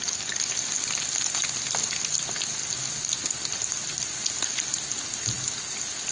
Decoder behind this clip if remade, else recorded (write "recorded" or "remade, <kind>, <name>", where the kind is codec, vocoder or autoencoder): recorded